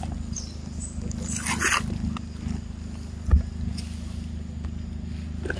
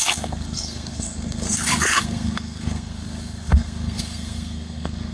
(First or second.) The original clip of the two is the first